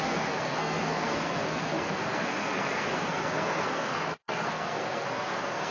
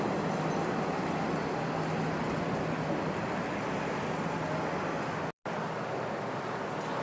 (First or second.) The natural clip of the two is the second